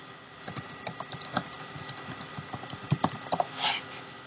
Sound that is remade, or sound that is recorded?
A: recorded